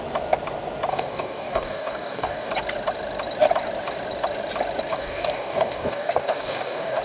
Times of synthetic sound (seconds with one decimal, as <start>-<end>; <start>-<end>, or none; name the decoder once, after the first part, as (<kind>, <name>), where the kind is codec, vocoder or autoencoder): 0.9-2.5 (codec, DAC); 4.9-7.0